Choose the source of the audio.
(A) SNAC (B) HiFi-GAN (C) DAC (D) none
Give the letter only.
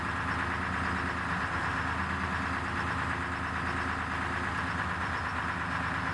D